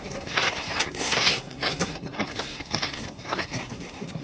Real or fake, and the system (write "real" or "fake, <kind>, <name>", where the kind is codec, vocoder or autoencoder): fake, codec, SNAC